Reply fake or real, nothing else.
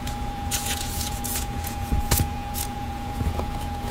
fake